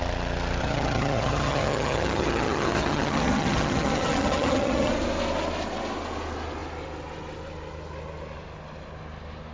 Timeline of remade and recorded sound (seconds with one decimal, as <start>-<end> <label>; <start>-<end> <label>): 0.0-0.6 recorded; 0.6-4.9 remade; 4.9-9.5 recorded